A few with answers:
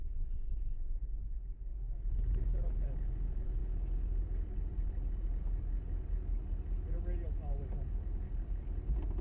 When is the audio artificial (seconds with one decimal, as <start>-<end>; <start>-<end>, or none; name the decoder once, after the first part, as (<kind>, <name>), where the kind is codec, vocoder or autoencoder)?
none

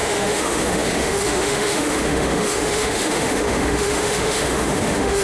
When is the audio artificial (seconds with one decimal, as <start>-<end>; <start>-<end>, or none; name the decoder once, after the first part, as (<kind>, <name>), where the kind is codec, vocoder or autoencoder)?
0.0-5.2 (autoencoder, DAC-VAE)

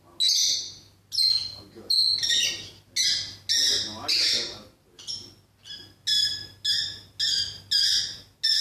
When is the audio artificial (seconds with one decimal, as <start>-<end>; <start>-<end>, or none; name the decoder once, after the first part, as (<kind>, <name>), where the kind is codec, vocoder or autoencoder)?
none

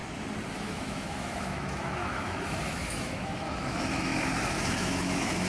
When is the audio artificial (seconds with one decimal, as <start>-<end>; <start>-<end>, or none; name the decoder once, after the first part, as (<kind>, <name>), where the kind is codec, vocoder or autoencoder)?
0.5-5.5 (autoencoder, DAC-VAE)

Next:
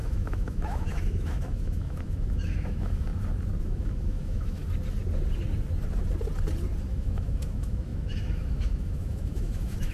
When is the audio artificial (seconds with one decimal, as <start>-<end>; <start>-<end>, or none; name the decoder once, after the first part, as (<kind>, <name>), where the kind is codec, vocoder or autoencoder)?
0.0-3.1 (autoencoder, DAC-VAE); 3.6-4.6; 6.9-9.9